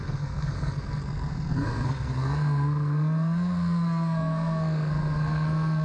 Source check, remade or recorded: remade